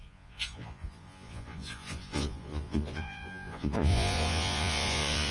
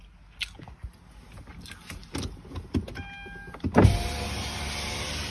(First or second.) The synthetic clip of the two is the first